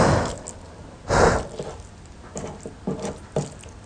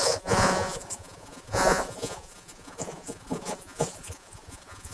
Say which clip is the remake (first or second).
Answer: second